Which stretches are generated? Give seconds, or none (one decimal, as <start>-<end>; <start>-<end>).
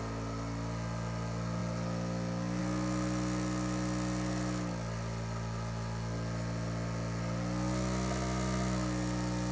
none